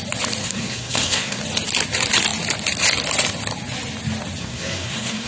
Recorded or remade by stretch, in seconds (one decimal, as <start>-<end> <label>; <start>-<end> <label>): 0.0-0.4 recorded; 0.4-1.4 remade; 1.4-4.4 recorded; 4.4-5.3 remade